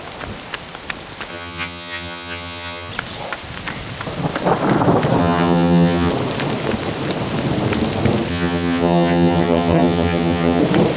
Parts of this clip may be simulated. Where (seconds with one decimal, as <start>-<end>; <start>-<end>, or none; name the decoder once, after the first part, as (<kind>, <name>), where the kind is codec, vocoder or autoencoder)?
1.3-2.9 (vocoder, HiFi-GAN); 5.2-6.1; 8.3-10.6